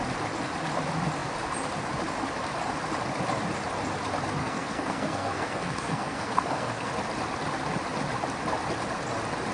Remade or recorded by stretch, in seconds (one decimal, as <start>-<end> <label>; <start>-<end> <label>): 0.0-4.4 recorded; 4.4-6.9 remade; 6.9-9.5 recorded